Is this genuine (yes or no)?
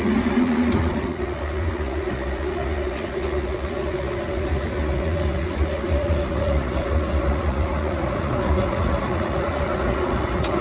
no